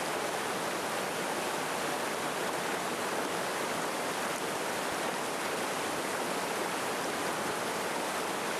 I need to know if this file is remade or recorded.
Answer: recorded